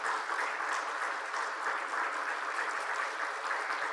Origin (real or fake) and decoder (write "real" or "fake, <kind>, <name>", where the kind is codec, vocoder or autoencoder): real